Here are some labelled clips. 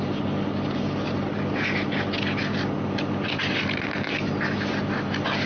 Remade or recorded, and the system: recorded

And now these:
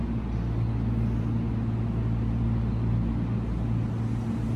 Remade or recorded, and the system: recorded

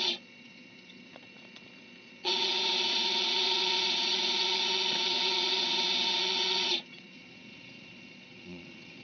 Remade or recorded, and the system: remade, vocoder, Vocos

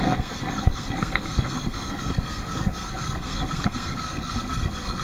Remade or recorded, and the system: remade, codec, SNAC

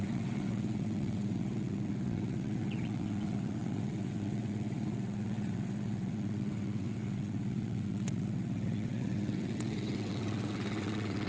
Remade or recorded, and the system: remade, vocoder, WaveNeXt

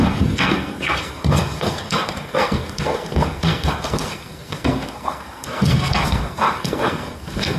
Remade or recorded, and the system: remade, codec, SNAC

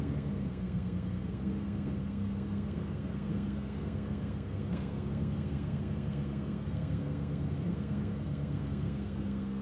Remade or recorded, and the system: remade, codec, SNAC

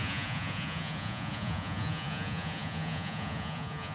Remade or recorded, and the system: remade, vocoder, Vocos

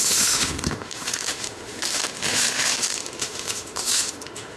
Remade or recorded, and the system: remade, autoencoder, DAC-VAE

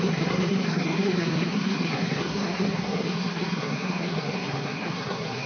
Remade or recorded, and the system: remade, codec, SNAC